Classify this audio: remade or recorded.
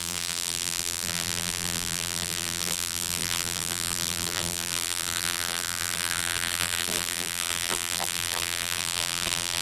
remade